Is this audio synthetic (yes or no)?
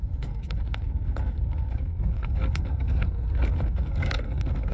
yes